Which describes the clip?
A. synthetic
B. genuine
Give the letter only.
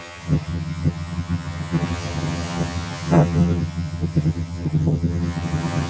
A